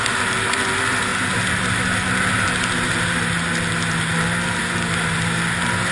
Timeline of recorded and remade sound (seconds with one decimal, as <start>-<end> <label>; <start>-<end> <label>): 0.0-5.9 recorded